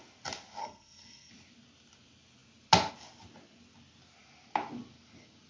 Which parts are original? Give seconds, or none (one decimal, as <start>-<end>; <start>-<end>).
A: 0.0-0.6; 1.3-5.5